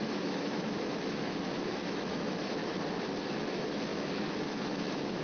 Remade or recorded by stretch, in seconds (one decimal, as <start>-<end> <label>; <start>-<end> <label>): 0.0-2.6 remade; 2.6-3.4 recorded; 3.4-5.2 remade